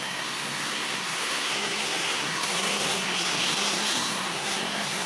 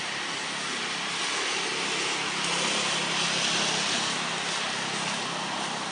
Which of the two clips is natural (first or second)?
second